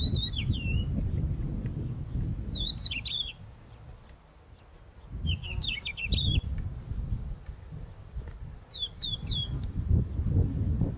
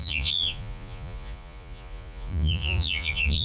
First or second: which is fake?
second